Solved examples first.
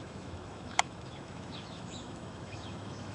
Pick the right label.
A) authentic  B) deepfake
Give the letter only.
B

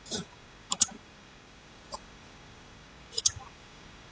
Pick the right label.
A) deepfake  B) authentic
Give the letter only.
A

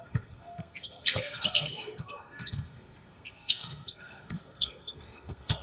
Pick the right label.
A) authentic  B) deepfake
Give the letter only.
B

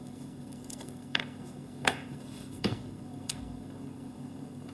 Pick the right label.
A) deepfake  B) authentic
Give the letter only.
A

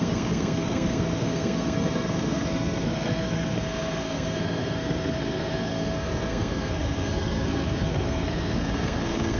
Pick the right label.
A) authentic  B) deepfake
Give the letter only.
B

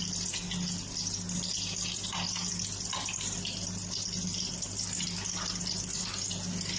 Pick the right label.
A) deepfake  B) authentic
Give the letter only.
B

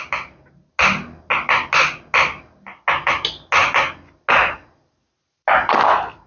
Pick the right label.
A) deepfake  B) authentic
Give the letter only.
B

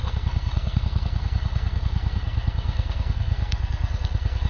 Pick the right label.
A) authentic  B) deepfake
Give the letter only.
B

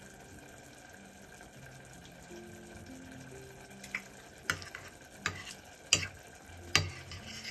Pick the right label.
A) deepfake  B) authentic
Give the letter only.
B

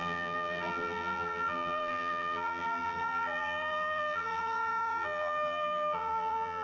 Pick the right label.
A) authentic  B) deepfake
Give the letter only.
B